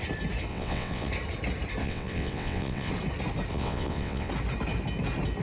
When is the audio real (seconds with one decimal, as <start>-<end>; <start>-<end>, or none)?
0.0-0.5; 1.1-1.8; 2.9-3.5; 4.3-5.4